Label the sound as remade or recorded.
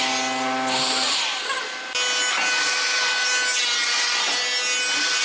recorded